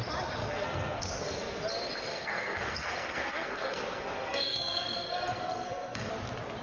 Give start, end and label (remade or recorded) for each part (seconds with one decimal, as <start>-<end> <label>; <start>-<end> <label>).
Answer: 0.0-0.4 recorded; 0.4-1.4 remade; 1.4-2.1 recorded; 2.1-6.1 remade; 6.1-6.6 recorded